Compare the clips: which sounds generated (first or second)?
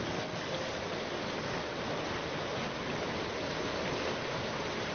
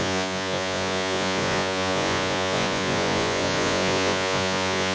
second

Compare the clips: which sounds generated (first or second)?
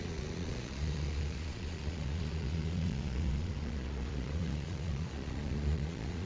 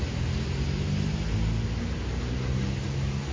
first